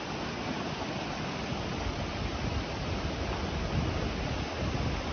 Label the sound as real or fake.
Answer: real